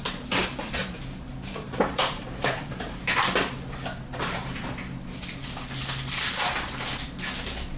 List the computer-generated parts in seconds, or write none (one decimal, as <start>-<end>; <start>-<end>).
0.8-3.1

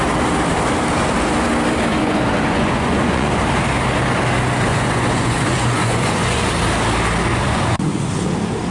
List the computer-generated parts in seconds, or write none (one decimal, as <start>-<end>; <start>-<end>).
1.9-3.3; 4.7-6.5; 7.3-8.1

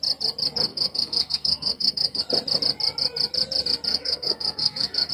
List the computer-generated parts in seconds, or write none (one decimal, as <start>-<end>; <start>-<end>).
0.7-2.2; 3.9-5.1

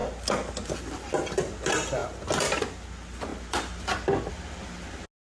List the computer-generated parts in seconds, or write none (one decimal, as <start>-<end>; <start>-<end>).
none

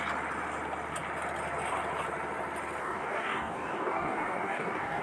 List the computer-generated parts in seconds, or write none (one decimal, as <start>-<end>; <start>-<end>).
2.8-5.0

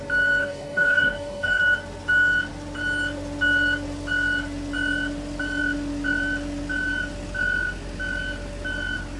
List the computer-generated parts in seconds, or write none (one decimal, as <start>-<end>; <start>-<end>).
0.4-1.6

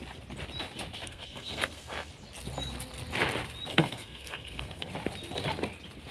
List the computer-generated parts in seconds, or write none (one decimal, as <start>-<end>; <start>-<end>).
1.0-2.1; 3.7-4.9